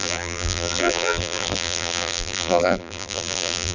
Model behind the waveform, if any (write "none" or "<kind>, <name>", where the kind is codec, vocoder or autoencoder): vocoder, BigVGAN v2